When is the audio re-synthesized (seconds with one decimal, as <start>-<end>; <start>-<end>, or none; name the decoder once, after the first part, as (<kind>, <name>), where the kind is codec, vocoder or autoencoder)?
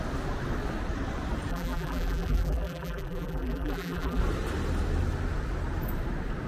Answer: 1.5-4.2 (vocoder, BigVGAN v2)